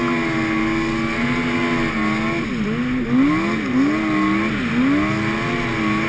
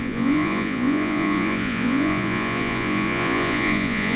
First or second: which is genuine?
first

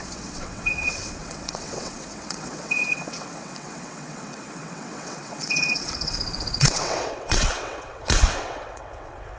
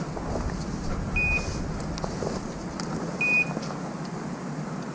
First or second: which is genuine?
second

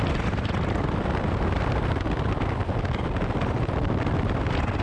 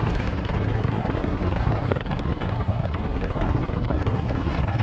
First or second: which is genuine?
first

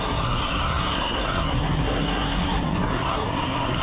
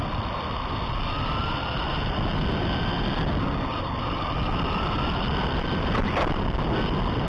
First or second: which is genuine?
second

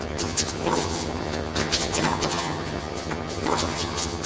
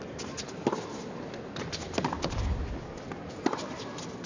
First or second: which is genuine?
second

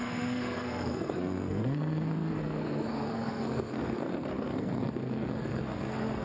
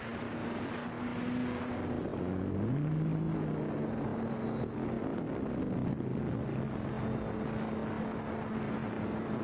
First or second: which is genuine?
second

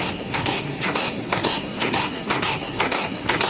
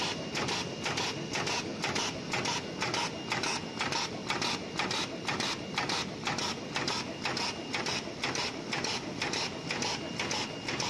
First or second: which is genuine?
second